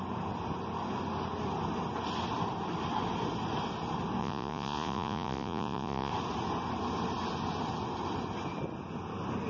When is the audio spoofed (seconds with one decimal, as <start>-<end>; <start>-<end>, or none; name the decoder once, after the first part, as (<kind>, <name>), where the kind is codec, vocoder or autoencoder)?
4.2-6.1 (vocoder, Vocos)

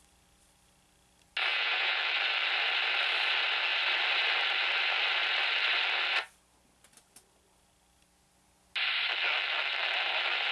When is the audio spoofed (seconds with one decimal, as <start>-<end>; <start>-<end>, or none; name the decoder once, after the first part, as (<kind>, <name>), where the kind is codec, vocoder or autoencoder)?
1.5-2.0 (vocoder, Vocos)

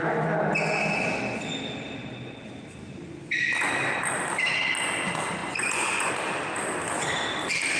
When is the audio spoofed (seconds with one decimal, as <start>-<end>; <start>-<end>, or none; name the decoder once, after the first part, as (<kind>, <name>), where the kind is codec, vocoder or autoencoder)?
5.4-6.1 (vocoder, Vocos)

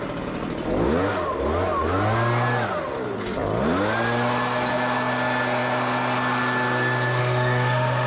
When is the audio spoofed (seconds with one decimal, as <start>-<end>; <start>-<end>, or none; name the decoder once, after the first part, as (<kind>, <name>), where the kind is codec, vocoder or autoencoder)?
7.2-8.1 (autoencoder, DAC-VAE)

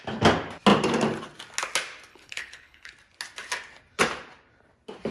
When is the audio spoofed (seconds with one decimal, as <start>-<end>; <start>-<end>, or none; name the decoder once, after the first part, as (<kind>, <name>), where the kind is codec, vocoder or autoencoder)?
2.1-2.9 (codec, HILCodec)

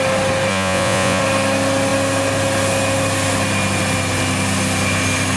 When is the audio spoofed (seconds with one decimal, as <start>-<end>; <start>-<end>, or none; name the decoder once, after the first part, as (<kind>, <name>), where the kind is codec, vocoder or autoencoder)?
0.5-1.2 (vocoder, Vocos)

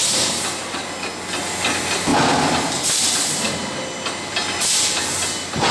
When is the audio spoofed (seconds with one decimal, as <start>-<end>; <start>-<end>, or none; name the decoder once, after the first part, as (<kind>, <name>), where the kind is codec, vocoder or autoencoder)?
none

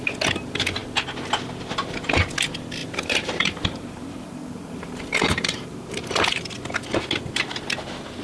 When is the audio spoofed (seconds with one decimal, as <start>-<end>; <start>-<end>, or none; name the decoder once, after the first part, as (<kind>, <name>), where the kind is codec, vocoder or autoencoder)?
2.8-6.4 (vocoder, BigVGAN v2)